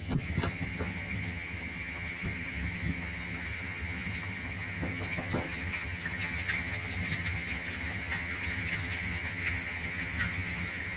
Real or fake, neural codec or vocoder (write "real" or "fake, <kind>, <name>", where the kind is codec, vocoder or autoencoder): fake, vocoder, HiFi-GAN